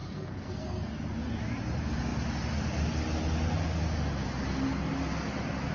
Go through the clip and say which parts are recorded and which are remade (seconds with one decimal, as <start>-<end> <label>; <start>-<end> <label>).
0.0-0.9 remade; 0.9-5.7 recorded